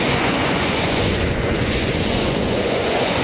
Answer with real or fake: fake